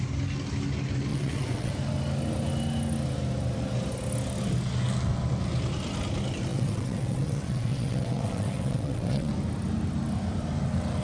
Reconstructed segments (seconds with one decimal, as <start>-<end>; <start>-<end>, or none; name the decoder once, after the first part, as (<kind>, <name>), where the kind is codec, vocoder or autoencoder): 1.1-1.7 (vocoder, WaveNeXt); 6.5-9.3